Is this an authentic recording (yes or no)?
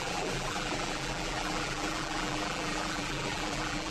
no